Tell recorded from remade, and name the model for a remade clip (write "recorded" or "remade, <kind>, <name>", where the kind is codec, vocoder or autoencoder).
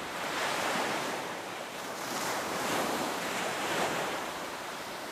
remade, vocoder, BigVGAN v2